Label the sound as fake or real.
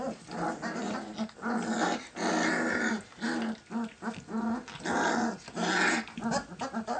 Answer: real